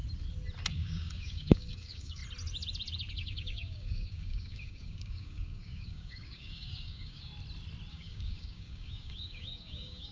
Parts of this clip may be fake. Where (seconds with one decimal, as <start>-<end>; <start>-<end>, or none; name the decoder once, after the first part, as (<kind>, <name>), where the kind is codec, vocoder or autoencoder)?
0.7-2.2 (codec, DAC); 3.1-7.3; 7.9-10.1